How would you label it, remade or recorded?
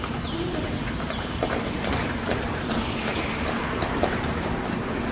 remade